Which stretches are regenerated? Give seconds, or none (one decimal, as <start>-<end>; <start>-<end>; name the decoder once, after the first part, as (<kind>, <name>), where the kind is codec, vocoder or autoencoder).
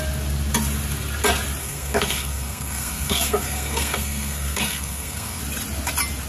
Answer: 1.6-5.4 (codec, SNAC)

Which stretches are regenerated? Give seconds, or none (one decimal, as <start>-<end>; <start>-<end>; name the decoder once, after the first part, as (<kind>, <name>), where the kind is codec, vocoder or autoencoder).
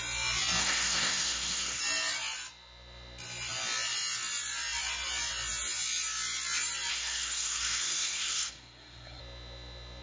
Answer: 0.6-1.8 (codec, SNAC); 6.9-9.2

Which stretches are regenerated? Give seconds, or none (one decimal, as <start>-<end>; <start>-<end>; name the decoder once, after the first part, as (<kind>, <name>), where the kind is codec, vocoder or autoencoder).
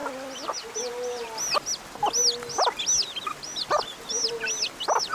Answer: none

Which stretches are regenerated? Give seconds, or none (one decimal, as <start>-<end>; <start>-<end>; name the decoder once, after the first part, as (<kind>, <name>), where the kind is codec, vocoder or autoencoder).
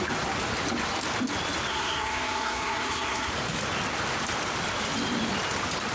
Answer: 1.7-3.3 (codec, SNAC)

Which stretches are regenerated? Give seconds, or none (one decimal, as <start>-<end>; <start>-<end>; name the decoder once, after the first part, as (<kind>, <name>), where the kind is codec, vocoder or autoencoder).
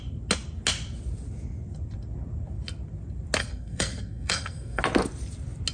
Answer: 3.4-4.8 (codec, SNAC)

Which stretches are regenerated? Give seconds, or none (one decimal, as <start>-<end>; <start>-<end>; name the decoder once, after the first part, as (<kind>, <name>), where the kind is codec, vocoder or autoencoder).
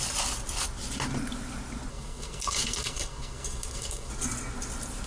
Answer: 1.9-4.1 (codec, SNAC)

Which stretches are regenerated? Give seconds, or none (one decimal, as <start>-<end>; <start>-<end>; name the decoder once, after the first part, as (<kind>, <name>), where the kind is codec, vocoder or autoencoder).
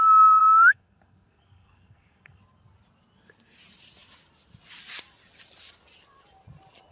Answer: 0.4-2.4 (codec, SNAC)